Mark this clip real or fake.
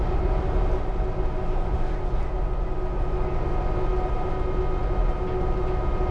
real